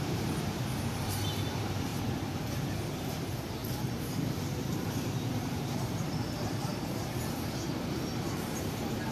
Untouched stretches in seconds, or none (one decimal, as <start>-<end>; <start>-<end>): none